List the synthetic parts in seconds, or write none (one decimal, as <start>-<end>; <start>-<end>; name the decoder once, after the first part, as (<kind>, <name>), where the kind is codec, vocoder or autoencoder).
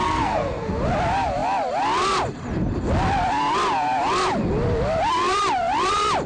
0.0-0.7 (codec, SNAC)